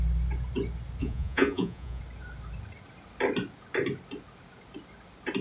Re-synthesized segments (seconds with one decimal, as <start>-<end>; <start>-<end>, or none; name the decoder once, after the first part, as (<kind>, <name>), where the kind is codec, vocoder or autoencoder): 1.0-2.0 (vocoder, Vocos)